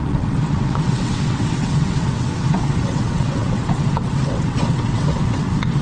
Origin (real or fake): fake